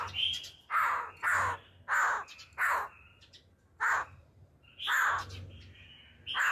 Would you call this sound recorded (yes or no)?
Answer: yes